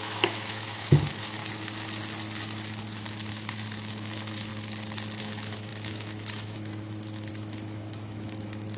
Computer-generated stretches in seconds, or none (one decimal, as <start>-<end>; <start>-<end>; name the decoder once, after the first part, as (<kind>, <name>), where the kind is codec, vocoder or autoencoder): 0.0-1.4 (autoencoder, DAC-VAE); 3.3-4.5; 5.2-8.8